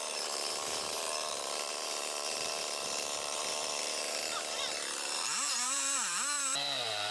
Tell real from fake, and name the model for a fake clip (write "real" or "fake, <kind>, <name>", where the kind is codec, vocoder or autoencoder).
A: fake, vocoder, BigVGAN v2